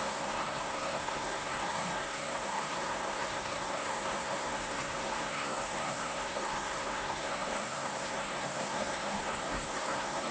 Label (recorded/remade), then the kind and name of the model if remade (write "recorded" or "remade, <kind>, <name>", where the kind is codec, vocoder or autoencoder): remade, codec, SNAC